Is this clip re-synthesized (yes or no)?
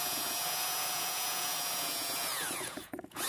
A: yes